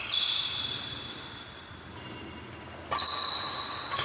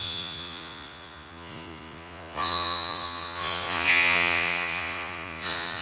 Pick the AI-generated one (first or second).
second